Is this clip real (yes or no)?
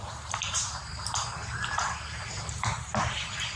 no